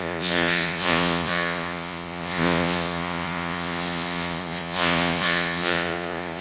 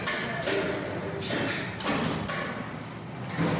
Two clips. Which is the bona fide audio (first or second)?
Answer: second